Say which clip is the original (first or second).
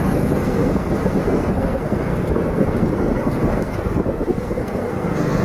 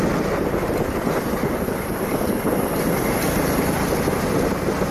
second